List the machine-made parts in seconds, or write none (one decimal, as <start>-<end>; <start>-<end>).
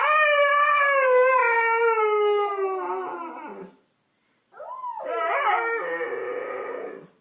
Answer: none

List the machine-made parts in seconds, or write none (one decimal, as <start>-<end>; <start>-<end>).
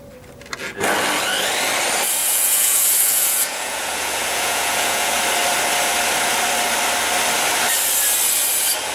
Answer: 2.2-5.2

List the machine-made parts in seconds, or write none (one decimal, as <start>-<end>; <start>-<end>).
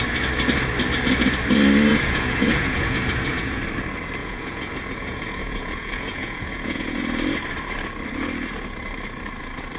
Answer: 1.9-3.6; 4.2-7.0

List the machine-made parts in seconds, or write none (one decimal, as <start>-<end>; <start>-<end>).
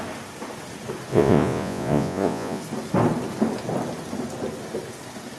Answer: 1.1-2.6